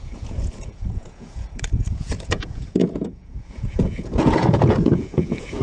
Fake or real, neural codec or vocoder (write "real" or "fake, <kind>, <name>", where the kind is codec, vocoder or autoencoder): fake, vocoder, Vocos